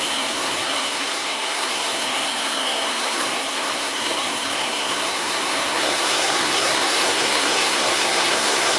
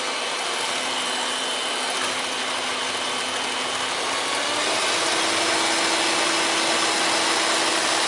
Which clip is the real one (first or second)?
second